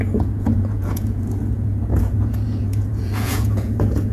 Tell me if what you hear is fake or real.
fake